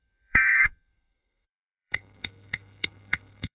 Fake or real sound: fake